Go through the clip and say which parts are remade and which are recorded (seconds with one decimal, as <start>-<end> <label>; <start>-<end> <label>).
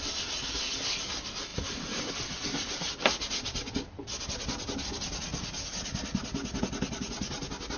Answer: 0.0-7.8 recorded